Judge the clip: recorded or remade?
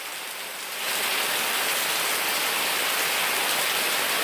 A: recorded